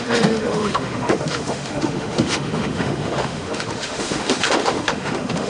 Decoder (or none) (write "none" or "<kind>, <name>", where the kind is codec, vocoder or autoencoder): autoencoder, DAC-VAE